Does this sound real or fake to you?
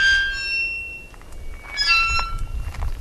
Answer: real